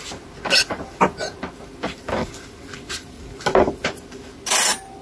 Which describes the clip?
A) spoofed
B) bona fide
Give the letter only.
B